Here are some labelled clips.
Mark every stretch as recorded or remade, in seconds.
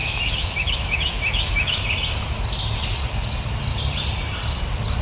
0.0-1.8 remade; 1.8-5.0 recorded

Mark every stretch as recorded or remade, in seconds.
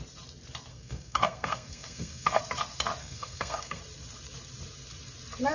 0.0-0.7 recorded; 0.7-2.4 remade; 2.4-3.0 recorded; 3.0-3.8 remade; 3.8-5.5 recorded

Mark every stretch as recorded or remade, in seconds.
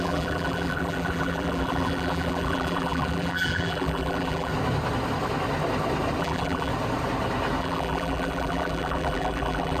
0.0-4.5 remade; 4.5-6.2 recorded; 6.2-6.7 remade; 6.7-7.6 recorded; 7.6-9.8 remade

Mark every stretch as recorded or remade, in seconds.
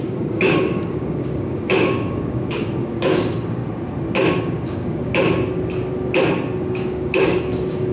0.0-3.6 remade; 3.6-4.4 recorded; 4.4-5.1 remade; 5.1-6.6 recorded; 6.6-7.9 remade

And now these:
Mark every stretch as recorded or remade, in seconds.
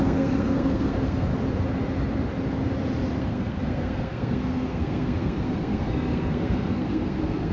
0.0-1.3 remade; 1.3-3.2 recorded; 3.2-7.5 remade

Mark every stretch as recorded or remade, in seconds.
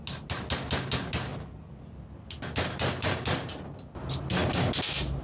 0.0-5.2 recorded